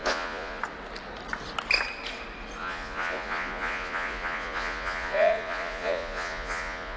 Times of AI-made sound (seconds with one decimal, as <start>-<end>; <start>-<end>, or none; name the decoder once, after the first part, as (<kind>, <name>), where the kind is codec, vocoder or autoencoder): 0.0-0.6 (vocoder, Vocos); 2.6-7.0